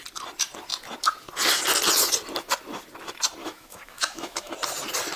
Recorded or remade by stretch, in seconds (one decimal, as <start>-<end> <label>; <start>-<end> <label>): 0.0-3.4 recorded; 3.4-4.5 remade; 4.5-5.2 recorded